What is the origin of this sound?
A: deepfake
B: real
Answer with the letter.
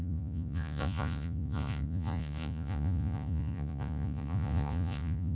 A